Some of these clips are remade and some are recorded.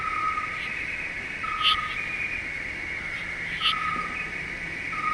recorded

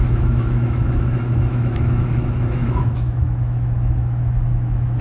remade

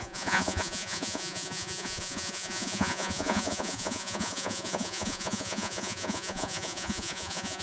remade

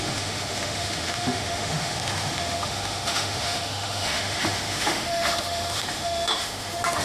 remade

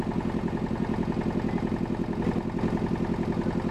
recorded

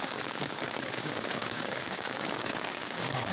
remade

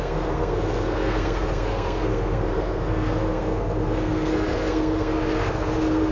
remade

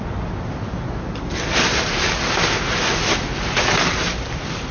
remade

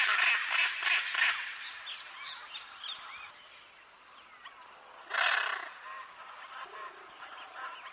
recorded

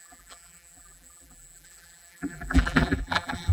remade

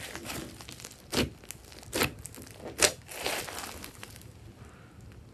recorded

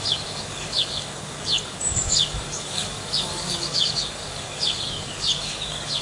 remade